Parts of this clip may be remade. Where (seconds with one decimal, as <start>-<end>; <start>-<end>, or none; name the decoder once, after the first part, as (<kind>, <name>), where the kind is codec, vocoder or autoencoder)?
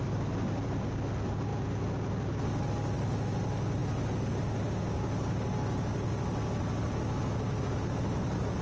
none